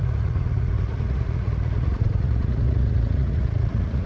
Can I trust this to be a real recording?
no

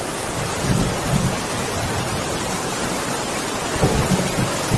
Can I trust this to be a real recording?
yes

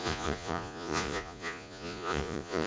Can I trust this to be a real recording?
no